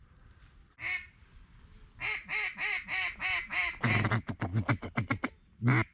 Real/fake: real